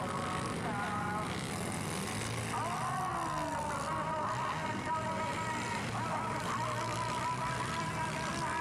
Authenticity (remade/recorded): recorded